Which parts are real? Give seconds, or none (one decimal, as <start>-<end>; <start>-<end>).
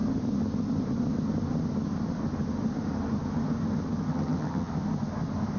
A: 0.0-4.1; 4.7-5.6